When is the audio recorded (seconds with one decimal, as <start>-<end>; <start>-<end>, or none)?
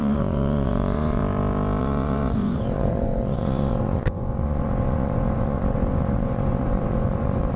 1.2-1.8